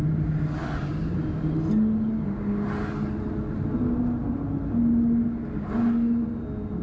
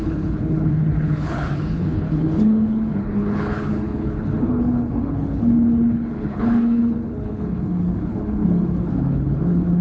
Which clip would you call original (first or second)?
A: first